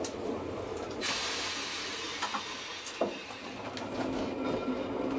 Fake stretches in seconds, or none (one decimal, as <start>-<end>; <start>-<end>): none